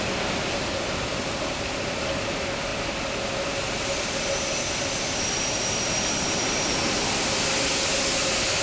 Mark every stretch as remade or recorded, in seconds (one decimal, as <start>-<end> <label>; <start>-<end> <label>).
0.0-8.6 recorded